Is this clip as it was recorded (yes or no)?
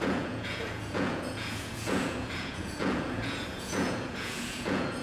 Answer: no